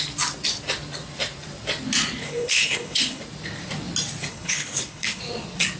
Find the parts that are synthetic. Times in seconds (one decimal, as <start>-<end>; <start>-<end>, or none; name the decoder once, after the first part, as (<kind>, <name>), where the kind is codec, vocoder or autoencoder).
2.2-3.2 (codec, HILCodec); 4.3-5.2